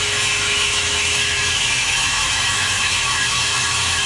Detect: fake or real fake